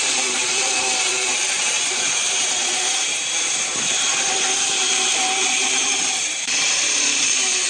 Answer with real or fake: fake